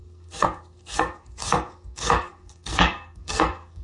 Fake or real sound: fake